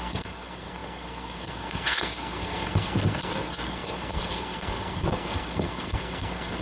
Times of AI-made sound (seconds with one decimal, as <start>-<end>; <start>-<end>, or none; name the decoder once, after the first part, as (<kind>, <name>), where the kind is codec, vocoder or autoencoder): 0.0-6.6 (codec, SNAC)